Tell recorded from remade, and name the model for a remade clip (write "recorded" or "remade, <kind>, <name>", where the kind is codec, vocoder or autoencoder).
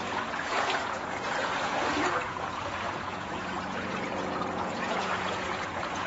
remade, vocoder, Vocos